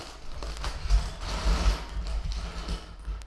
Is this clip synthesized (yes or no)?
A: no